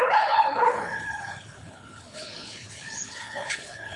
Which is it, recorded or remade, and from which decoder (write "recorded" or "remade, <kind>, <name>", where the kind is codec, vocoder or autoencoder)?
remade, codec, HILCodec